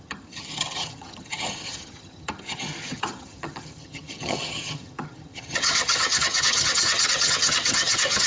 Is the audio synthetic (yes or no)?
yes